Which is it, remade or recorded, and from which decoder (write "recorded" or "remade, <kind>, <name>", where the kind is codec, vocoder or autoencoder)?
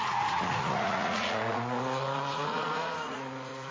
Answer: remade, vocoder, Vocos